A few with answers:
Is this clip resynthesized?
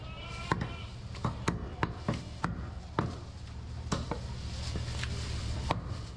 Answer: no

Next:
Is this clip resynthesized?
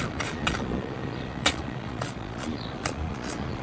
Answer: yes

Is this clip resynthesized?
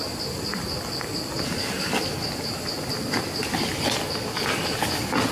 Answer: no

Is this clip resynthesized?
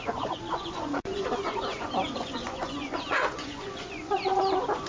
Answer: yes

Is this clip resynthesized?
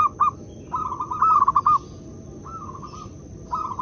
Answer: no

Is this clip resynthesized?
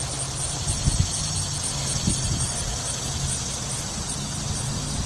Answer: no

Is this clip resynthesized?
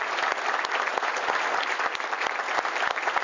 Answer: no